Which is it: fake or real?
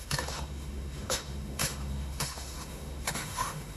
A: fake